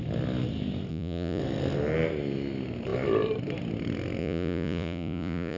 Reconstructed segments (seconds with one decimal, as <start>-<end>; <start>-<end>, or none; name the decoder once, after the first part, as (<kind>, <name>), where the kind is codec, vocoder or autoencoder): 0.9-1.4 (vocoder, Vocos); 4.2-5.6